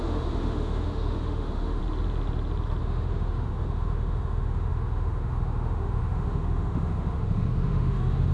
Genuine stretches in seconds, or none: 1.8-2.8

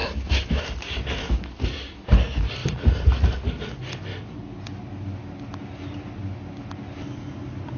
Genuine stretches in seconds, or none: 0.6-7.8

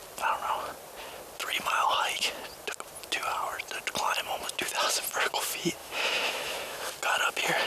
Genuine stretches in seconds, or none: 0.0-5.8; 6.9-7.7

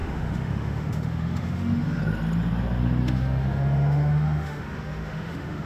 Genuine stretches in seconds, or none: 2.0-3.0